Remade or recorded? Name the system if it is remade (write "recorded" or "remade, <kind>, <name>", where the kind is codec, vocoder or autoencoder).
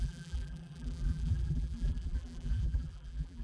remade, vocoder, BigVGAN v2